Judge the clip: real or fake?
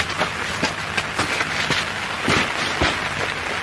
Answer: real